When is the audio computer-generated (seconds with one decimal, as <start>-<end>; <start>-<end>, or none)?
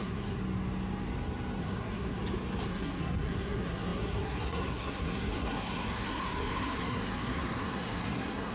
0.0-0.4; 1.6-2.2; 2.7-8.5